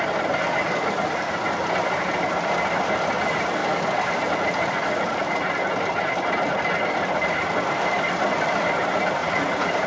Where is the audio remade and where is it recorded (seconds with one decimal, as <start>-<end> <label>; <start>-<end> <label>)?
0.0-9.2 recorded; 9.2-9.9 remade